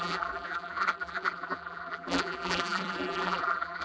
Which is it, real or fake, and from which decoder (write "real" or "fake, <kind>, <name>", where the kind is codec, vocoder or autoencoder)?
fake, vocoder, BigVGAN v2